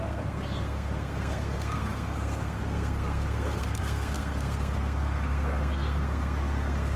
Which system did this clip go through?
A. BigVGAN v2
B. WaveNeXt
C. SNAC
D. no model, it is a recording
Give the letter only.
C